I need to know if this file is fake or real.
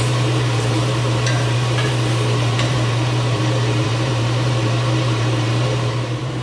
fake